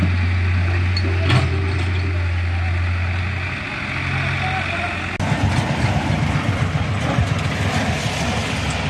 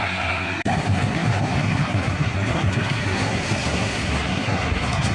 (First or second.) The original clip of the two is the first